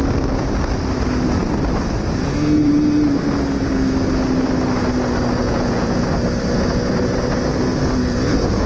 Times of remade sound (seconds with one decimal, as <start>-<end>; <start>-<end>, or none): 5.4-6.1; 8.0-8.7